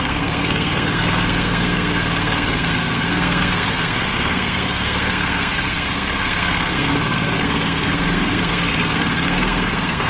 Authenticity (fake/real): fake